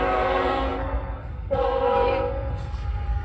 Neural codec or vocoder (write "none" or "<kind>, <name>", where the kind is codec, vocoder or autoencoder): codec, SNAC